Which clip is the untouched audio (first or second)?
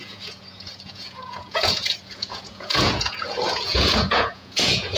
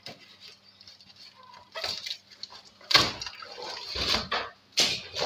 second